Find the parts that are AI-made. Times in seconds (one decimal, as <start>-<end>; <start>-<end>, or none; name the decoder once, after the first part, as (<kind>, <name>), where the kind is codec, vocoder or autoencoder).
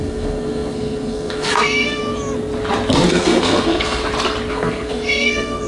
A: 0.0-2.0 (codec, SNAC); 3.1-4.0; 4.5-5.7